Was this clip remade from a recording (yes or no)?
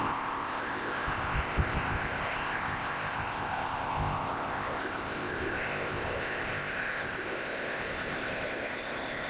yes